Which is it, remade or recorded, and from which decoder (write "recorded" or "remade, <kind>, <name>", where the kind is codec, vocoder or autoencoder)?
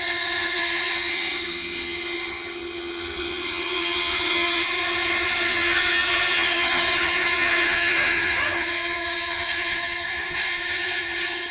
remade, vocoder, HiFi-GAN